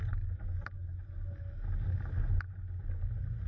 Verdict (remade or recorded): recorded